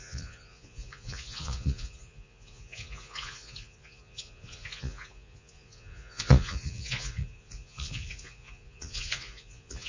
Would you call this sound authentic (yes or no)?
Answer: no